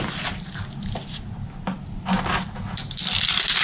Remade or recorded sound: recorded